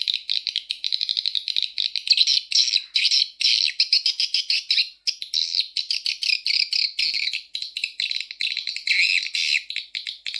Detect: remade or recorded recorded